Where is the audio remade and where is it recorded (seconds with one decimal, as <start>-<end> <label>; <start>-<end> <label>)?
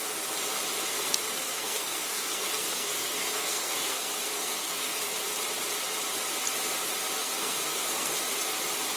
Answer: 0.0-0.9 recorded; 0.9-5.0 remade; 5.0-7.2 recorded; 7.2-8.2 remade; 8.2-9.0 recorded